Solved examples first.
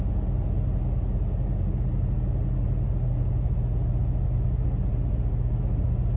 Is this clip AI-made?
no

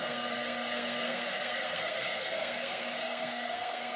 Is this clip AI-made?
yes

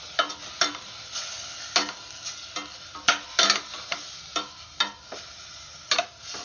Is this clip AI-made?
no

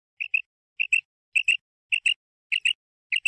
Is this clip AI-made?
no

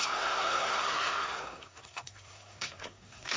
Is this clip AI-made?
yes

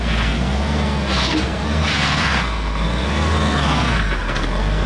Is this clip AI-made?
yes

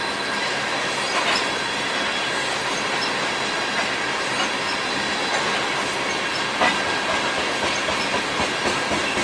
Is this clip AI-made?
no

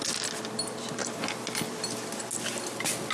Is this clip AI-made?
no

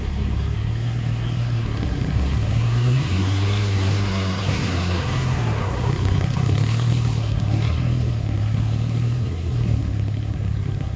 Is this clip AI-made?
yes